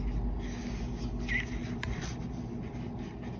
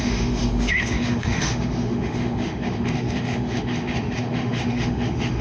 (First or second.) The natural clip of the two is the first